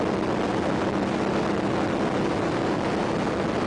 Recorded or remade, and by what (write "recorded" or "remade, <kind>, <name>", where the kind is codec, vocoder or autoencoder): recorded